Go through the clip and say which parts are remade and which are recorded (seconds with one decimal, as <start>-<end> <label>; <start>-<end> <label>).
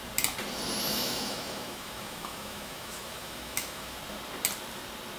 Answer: 0.0-0.9 recorded; 0.9-4.0 remade; 4.0-5.2 recorded